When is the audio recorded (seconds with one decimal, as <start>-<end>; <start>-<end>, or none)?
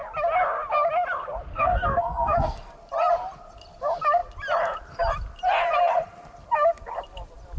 0.0-1.5; 2.7-7.6